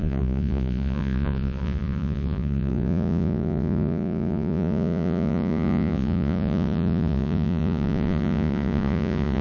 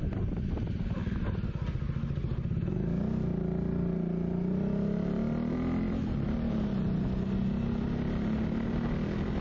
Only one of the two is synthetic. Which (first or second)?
first